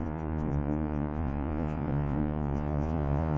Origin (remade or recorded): remade